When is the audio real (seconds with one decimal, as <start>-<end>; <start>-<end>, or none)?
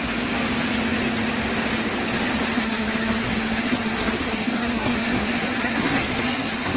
0.0-2.5